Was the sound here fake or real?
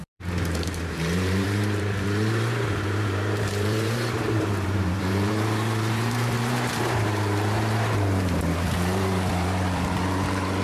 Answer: fake